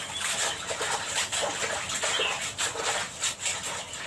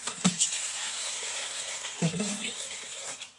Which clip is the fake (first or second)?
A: second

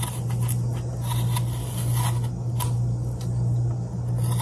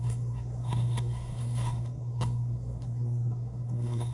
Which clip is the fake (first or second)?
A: second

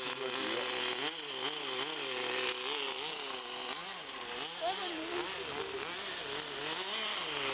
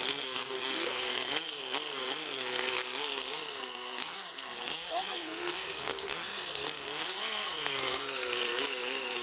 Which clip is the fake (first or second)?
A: second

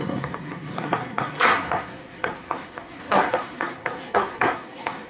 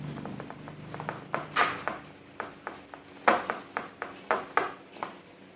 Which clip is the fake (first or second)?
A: first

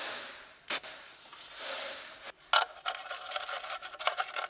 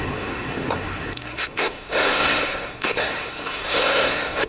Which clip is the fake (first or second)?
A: second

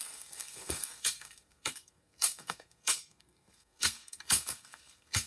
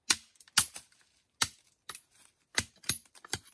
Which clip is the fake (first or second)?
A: first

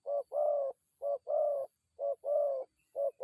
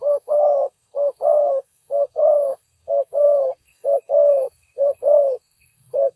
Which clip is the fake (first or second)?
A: second